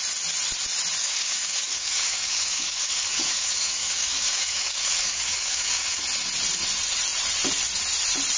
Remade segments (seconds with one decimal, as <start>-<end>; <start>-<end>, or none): 1.0-6.0